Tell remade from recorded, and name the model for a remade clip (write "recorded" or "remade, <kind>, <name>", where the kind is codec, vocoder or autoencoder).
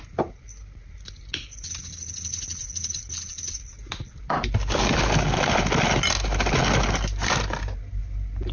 recorded